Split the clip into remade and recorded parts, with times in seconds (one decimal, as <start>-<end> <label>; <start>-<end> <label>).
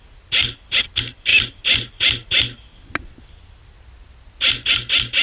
0.0-5.2 recorded